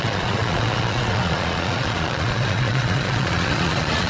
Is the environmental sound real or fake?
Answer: fake